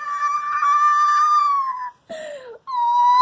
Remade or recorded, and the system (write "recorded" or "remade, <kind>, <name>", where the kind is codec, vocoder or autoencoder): recorded